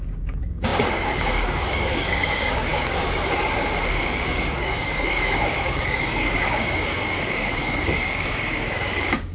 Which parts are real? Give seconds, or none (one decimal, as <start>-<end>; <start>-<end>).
none